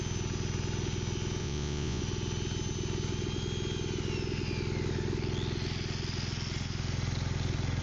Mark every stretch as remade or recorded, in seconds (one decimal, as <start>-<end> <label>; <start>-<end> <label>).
0.0-1.4 recorded; 1.4-2.0 remade; 2.0-7.8 recorded